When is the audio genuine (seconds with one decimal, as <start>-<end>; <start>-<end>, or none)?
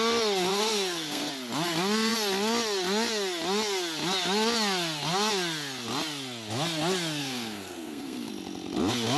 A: 0.0-0.5; 1.3-7.2; 8.3-9.2